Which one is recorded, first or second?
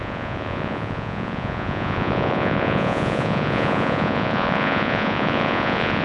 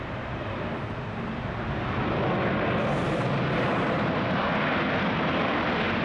second